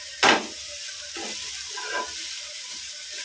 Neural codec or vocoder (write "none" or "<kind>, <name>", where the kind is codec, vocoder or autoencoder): none